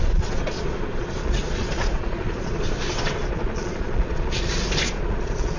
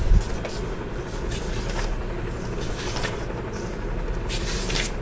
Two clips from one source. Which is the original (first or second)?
second